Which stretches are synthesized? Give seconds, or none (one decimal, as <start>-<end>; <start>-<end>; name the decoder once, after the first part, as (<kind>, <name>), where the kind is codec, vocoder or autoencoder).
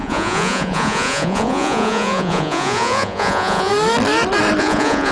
0.0-3.7 (vocoder, Vocos); 4.6-5.1